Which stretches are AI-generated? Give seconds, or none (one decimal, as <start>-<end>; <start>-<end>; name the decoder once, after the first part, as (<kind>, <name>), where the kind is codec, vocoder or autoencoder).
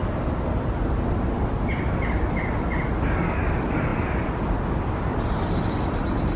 none